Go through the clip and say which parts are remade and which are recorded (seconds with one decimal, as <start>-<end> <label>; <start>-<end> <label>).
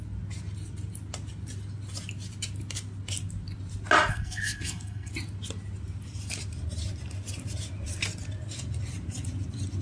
0.0-4.1 recorded; 4.1-5.1 remade; 5.1-9.8 recorded